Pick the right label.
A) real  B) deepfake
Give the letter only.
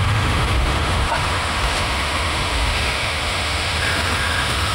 B